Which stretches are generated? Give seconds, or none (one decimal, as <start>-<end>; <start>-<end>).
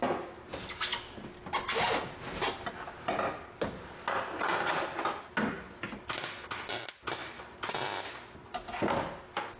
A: none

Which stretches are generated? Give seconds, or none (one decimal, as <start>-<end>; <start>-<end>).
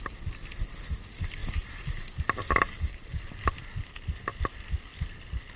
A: none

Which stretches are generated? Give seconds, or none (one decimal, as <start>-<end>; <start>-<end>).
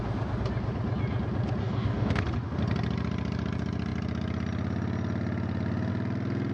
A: 1.6-2.2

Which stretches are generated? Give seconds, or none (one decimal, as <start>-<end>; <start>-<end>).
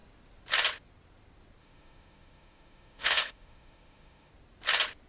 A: 1.6-4.3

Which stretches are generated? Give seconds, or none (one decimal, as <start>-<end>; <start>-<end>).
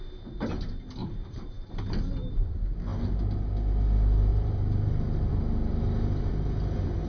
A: 1.0-2.5; 4.3-5.3; 5.7-6.3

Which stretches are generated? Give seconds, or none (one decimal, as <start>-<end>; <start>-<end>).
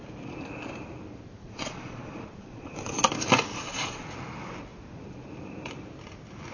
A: 1.4-3.1; 3.5-4.1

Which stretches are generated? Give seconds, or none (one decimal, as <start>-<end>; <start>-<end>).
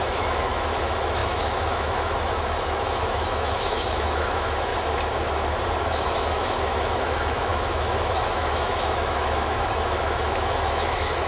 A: 0.0-4.7; 5.8-11.3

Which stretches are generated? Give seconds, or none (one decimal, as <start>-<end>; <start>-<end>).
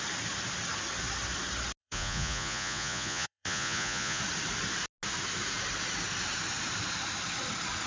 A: 1.8-4.2